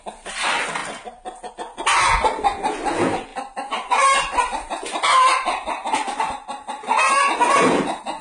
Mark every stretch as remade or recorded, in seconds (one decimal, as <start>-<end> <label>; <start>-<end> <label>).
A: 0.0-0.8 recorded; 0.8-1.5 remade; 1.5-3.3 recorded; 3.3-5.7 remade; 5.7-8.2 recorded